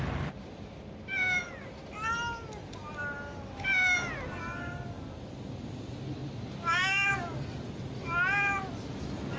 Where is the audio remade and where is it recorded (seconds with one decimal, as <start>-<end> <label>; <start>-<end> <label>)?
0.0-9.4 recorded